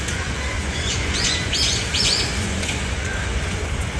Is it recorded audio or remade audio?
remade